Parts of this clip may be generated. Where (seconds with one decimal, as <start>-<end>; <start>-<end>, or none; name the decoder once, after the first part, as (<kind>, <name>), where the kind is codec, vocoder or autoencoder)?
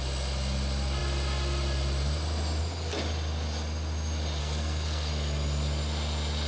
4.4-5.1 (codec, SNAC)